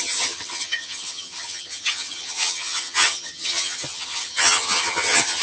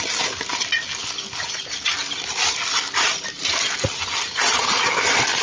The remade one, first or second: first